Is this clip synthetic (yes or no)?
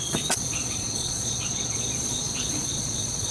yes